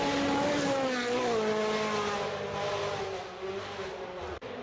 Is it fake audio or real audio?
real